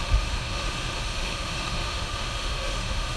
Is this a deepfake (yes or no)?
yes